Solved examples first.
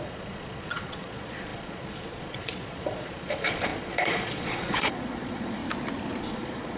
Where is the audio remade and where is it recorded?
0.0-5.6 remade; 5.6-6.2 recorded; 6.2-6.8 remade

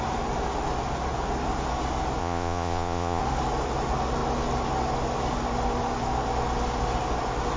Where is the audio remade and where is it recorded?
0.0-2.2 recorded; 2.2-3.2 remade; 3.2-7.6 recorded

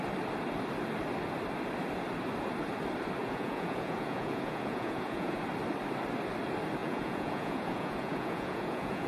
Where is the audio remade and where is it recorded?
0.0-3.2 recorded; 3.2-5.4 remade; 5.4-6.8 recorded; 6.8-9.1 remade

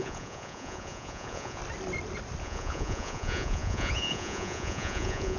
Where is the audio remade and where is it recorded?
0.0-1.6 remade; 1.6-2.4 recorded; 2.4-5.4 remade

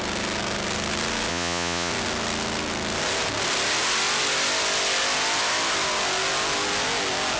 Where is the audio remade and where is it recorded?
0.0-1.3 recorded; 1.3-1.9 remade; 1.9-7.4 recorded

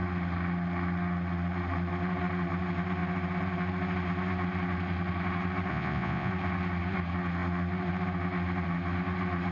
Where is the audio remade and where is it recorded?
0.0-5.7 recorded; 5.7-6.3 remade; 6.3-9.5 recorded